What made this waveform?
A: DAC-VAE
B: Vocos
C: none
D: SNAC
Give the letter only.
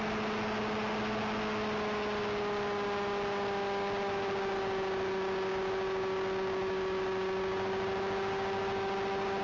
C